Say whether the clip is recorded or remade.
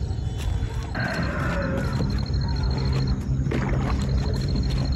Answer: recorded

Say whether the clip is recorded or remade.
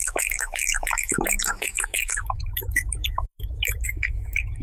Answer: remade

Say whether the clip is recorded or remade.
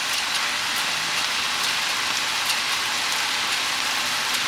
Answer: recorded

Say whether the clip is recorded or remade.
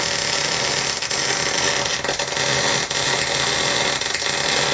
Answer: recorded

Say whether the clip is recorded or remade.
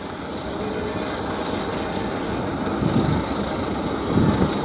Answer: recorded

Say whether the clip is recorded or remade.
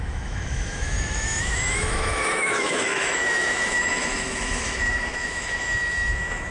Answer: remade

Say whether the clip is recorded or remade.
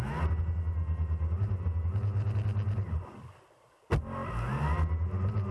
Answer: recorded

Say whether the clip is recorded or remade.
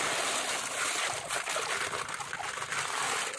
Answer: recorded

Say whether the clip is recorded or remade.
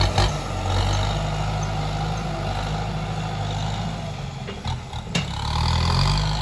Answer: recorded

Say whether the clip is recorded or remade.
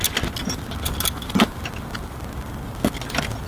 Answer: recorded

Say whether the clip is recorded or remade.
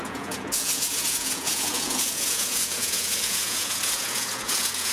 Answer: remade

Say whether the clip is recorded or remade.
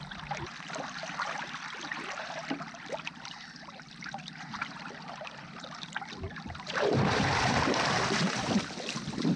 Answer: remade